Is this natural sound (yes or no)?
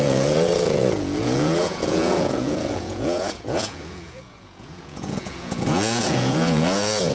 no